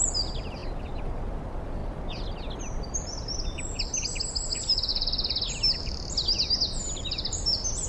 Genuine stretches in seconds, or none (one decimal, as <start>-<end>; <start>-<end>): 0.0-7.9